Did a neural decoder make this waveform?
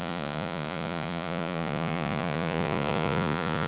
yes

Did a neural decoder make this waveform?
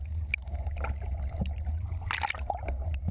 no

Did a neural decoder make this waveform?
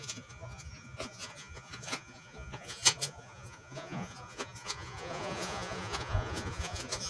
yes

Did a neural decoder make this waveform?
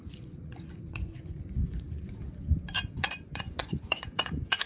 yes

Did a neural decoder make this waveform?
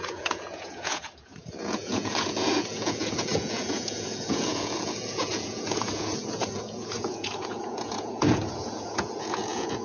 yes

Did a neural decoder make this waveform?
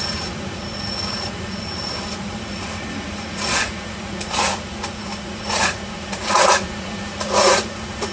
yes